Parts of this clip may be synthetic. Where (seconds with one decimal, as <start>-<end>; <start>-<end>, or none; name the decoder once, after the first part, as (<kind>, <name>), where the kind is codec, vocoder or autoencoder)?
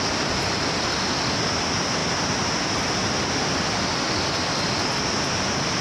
none